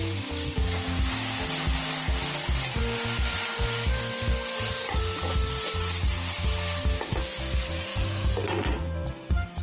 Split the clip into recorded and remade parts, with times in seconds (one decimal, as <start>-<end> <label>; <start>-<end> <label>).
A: 0.0-9.6 recorded